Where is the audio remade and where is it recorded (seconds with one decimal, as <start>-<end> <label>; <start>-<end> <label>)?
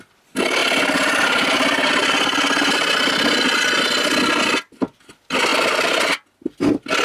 0.0-7.0 recorded